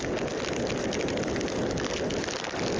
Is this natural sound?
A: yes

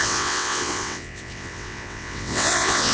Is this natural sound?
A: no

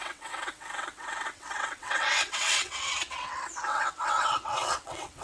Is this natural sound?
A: no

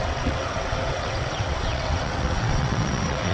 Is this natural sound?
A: no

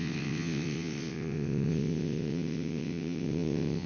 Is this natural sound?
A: no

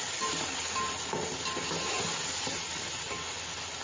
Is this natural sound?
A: yes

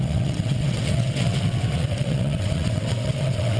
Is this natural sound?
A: no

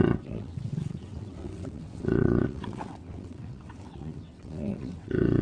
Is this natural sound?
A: no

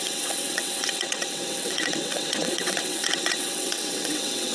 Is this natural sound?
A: no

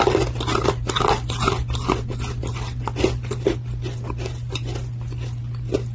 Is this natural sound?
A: yes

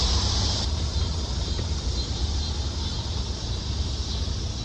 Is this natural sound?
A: yes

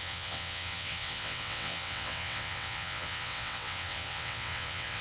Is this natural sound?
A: no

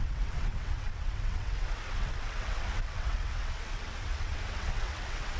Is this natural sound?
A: no